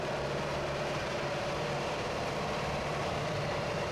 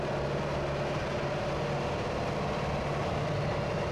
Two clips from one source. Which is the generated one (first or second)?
first